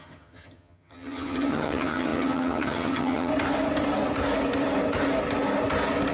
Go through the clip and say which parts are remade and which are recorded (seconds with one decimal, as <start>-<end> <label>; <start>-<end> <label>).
0.0-3.3 remade; 3.3-6.1 recorded

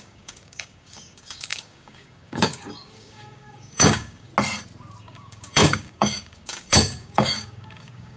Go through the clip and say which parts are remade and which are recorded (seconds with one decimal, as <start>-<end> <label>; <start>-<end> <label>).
0.0-4.3 remade; 4.3-5.0 recorded; 5.0-8.2 remade

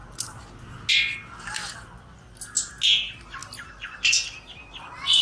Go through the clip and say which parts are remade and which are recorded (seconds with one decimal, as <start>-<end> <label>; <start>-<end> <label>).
0.0-5.2 recorded

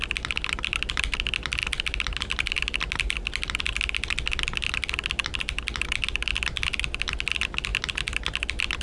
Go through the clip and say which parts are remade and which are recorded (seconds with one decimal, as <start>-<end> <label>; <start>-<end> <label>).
0.0-8.8 recorded

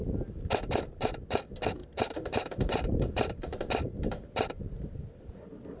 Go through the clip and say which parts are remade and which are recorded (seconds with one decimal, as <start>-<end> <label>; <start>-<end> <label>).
0.0-0.7 remade; 0.7-1.8 recorded; 1.8-5.3 remade; 5.3-5.8 recorded

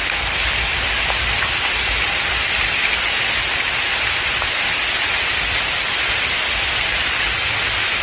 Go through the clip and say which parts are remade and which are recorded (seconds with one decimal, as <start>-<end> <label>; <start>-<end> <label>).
0.0-8.0 recorded